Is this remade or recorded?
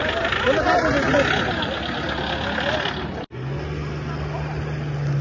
recorded